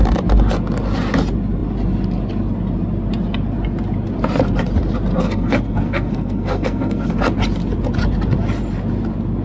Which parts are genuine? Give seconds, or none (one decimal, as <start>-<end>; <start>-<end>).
0.0-5.2; 7.1-9.4